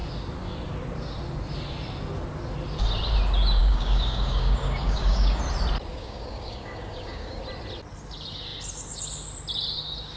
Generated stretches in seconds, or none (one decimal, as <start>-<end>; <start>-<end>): 3.6-5.4; 5.9-7.4